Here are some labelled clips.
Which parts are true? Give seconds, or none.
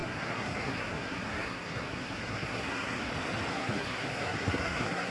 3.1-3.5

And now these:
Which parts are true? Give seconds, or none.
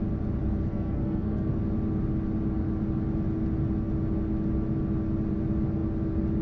0.0-0.7; 1.6-6.4